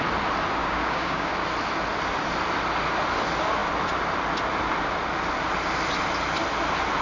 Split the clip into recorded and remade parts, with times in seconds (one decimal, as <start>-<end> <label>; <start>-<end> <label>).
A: 0.0-0.6 recorded; 0.6-1.3 remade; 1.3-7.0 recorded